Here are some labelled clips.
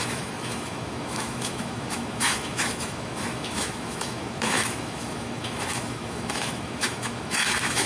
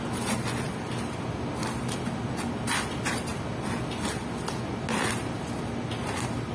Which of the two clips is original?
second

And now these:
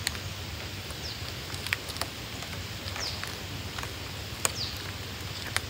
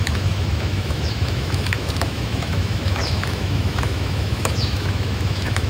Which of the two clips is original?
first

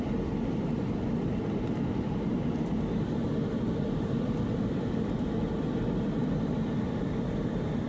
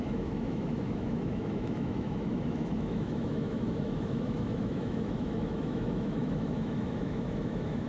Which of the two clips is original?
first